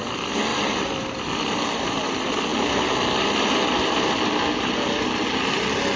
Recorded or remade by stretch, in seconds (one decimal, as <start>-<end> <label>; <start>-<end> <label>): 0.0-6.0 recorded